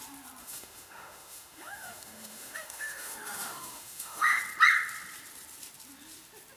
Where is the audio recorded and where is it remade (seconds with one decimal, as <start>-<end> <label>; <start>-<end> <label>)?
0.0-0.4 recorded; 0.4-4.4 remade; 4.4-6.6 recorded